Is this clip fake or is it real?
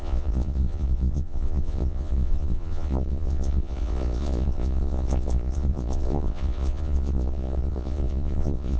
fake